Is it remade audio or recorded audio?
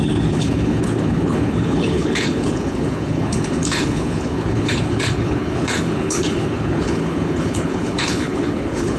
remade